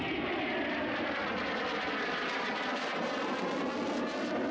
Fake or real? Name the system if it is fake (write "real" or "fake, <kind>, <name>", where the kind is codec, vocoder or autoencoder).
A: real